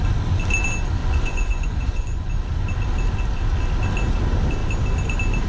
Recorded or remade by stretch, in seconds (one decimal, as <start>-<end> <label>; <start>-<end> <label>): 0.0-1.0 recorded; 1.0-2.3 remade; 2.3-5.5 recorded